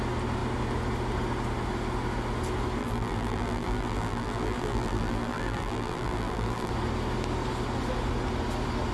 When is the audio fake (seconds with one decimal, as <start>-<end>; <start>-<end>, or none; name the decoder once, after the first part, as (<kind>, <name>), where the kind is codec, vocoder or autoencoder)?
2.8-6.7 (vocoder, BigVGAN v2)